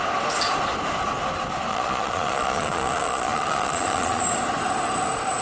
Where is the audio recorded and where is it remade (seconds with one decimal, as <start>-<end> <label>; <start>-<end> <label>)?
0.0-1.7 recorded; 1.7-4.2 remade; 4.2-5.4 recorded